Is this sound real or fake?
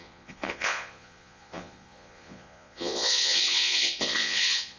fake